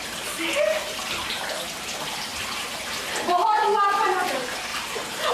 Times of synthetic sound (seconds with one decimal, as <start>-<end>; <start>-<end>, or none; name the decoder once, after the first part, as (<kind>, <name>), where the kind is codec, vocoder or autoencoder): 2.3-3.3 (vocoder, BigVGAN v2); 4.7-5.3